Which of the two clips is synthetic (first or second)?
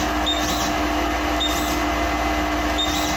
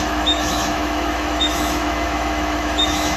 second